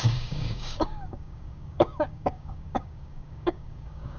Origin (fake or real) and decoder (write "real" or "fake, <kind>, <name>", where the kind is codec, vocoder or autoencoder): fake, codec, DAC